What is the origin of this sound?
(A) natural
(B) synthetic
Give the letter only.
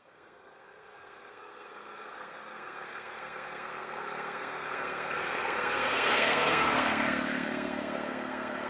B